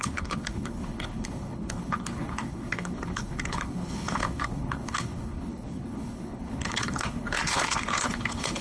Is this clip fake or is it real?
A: fake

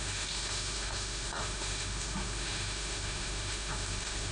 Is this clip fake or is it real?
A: fake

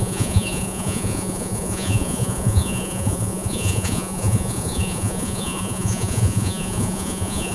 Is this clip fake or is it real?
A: fake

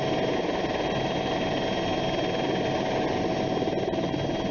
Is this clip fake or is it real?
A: real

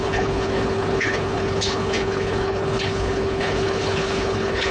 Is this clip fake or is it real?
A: fake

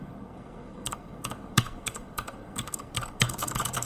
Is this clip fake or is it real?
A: fake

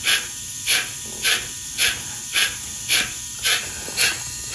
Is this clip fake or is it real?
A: real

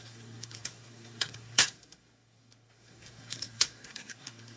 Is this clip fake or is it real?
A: fake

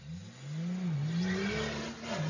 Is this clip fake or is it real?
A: real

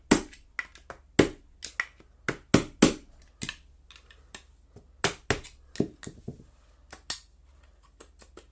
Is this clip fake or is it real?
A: real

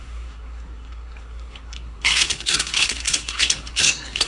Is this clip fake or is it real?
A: fake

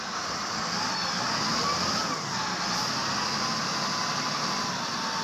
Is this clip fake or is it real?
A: real